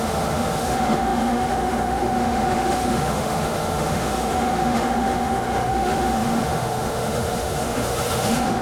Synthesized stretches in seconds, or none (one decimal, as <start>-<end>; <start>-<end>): 0.0-8.6